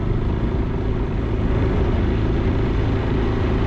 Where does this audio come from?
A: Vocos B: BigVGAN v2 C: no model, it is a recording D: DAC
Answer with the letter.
C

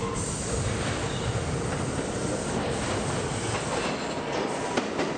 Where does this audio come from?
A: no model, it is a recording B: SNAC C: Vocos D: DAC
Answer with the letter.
A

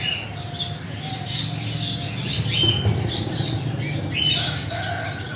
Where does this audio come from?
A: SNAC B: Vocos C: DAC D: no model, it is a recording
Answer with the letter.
D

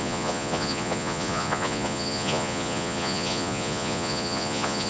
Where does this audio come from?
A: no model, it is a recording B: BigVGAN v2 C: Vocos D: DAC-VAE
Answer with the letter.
C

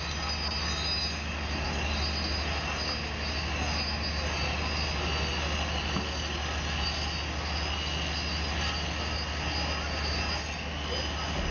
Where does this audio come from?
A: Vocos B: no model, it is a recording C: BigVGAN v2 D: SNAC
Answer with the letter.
B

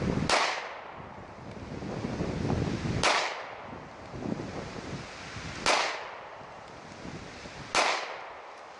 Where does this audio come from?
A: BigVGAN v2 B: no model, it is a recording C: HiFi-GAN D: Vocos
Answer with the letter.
B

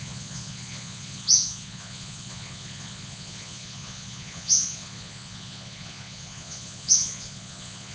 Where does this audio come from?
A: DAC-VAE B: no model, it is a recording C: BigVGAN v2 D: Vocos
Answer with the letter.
D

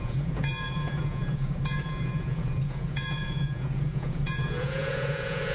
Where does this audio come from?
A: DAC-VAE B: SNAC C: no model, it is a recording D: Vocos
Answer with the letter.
D